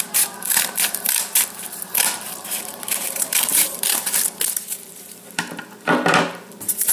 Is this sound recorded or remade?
remade